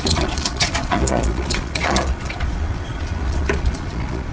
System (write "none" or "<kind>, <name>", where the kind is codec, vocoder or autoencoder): vocoder, Vocos